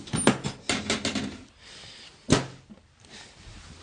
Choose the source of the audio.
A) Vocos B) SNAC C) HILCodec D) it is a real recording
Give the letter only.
D